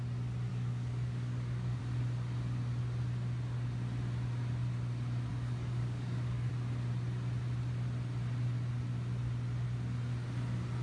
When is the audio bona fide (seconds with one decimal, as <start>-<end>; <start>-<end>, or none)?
0.0-0.5; 1.8-5.3; 6.5-10.8